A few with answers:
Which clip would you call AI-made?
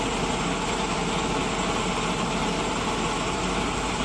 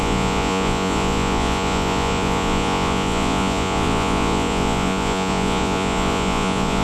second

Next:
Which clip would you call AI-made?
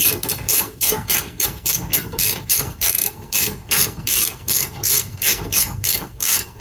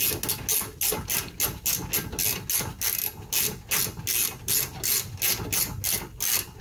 first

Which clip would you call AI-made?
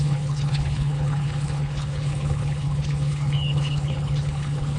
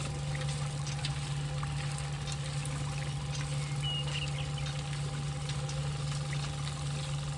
first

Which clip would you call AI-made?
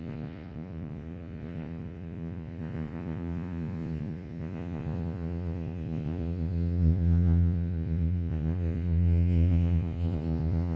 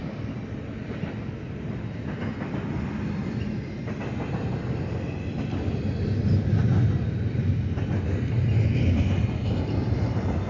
first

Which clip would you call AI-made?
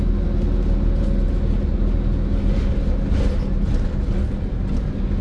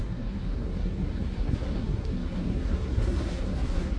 second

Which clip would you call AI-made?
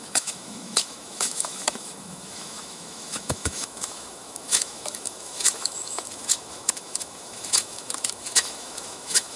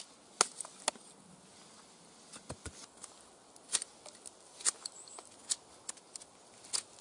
first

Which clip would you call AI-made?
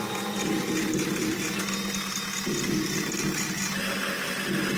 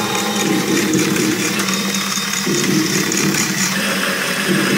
second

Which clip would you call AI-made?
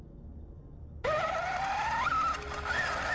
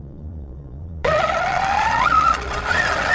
second